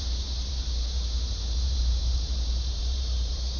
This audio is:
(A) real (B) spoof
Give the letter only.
B